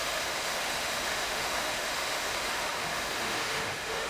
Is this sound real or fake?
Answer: fake